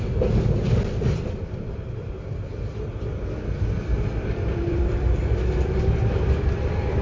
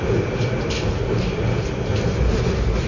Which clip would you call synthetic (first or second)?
first